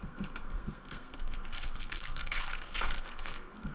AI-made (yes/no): yes